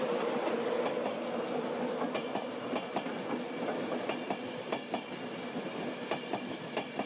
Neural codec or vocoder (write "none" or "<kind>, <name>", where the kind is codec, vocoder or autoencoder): none